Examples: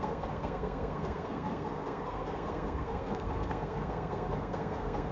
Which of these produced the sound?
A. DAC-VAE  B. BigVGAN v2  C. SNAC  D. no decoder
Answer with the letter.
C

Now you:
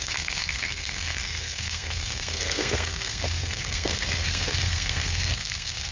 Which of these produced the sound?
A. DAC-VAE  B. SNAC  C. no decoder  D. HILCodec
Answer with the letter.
B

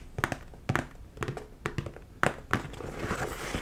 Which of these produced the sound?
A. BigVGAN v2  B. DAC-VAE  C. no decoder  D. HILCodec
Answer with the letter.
C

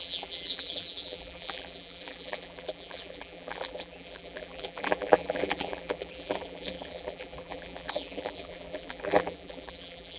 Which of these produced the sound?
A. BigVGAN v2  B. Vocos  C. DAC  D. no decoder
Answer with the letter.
A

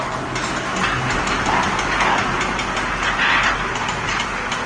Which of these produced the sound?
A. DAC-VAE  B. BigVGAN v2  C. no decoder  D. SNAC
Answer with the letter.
C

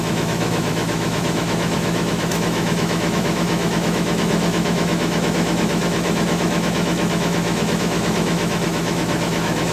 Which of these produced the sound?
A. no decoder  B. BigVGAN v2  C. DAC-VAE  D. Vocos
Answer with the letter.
C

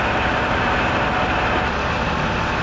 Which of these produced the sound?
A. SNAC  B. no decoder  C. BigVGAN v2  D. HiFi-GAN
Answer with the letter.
B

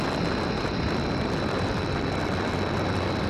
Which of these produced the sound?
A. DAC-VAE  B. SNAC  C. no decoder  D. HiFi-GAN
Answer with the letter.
C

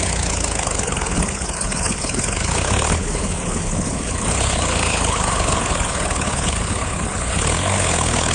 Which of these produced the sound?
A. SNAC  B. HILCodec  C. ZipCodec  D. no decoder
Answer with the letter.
B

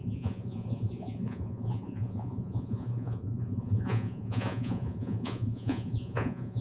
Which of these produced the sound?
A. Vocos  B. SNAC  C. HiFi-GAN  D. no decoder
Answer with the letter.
A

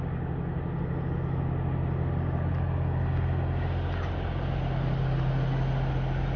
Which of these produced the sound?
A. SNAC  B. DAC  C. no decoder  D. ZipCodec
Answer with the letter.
C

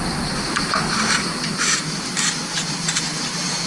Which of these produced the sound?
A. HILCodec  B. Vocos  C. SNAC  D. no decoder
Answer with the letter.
D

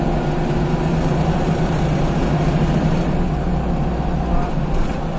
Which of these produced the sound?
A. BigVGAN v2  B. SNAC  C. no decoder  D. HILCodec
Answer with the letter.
C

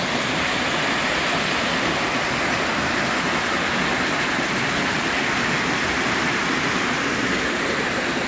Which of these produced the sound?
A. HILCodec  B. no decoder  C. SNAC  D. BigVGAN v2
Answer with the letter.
B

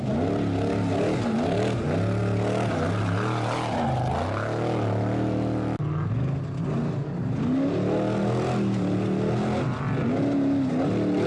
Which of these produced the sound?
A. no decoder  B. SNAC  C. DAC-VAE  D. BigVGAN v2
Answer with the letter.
A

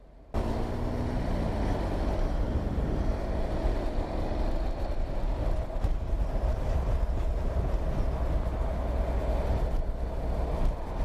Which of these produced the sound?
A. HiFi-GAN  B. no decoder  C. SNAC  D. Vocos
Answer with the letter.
B